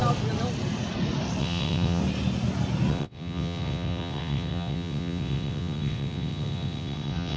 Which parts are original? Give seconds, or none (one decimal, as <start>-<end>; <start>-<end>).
0.0-1.4; 2.0-2.9